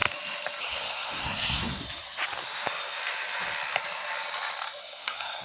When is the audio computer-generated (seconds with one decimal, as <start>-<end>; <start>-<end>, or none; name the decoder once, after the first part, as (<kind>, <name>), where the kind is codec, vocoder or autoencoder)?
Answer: 0.6-1.6 (codec, SNAC); 4.8-5.4